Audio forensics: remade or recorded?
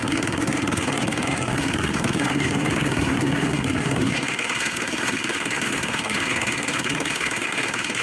remade